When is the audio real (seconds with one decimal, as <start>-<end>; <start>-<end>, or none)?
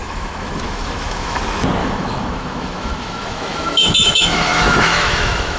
1.4-1.8